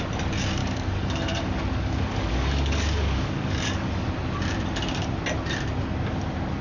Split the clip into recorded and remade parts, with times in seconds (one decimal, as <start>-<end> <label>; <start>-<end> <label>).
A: 0.0-0.6 recorded; 0.6-4.1 remade; 4.1-6.6 recorded